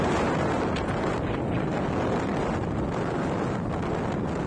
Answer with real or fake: real